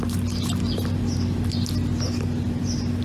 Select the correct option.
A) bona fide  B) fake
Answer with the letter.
A